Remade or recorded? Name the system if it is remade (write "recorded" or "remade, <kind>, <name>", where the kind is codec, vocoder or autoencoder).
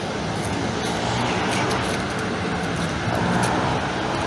recorded